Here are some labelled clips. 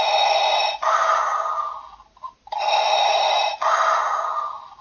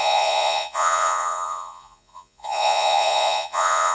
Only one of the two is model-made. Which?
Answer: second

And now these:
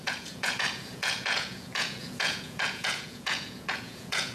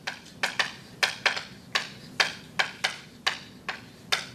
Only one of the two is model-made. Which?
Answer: first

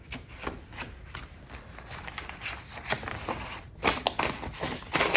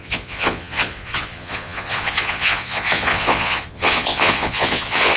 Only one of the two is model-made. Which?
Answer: second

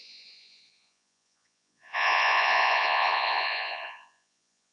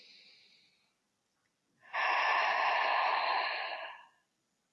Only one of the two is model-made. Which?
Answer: first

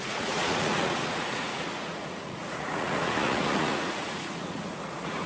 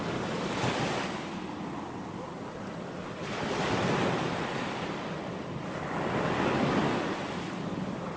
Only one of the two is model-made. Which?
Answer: first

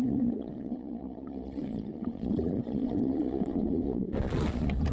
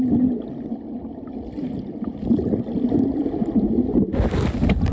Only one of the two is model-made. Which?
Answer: first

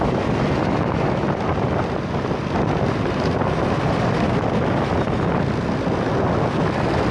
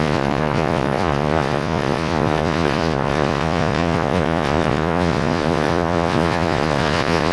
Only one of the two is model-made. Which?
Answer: second